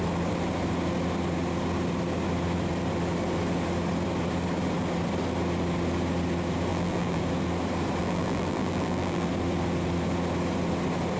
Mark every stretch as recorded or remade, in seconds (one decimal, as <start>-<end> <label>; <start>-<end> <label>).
0.0-6.7 recorded; 6.7-7.2 remade; 7.2-8.0 recorded; 8.0-9.3 remade; 9.3-11.2 recorded